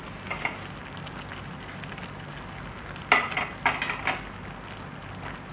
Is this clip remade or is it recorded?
recorded